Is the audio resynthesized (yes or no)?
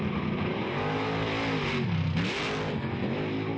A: no